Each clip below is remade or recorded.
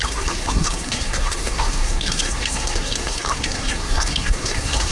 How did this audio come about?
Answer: remade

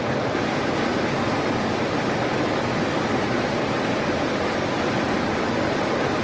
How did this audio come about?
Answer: recorded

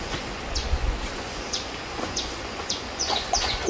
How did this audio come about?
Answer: remade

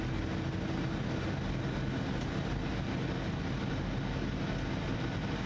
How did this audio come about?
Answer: recorded